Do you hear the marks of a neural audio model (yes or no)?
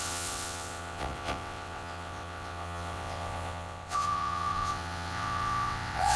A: yes